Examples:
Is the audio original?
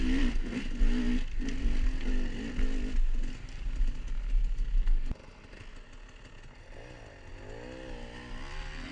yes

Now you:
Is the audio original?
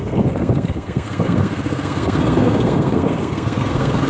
no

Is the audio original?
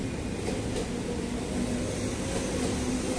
yes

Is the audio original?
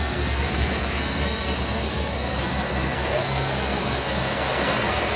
no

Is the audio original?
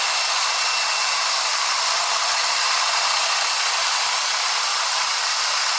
yes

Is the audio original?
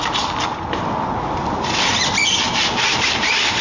no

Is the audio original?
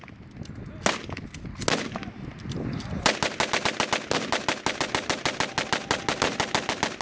yes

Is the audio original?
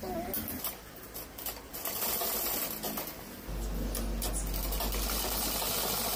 yes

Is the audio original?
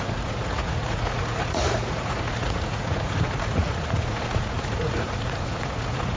no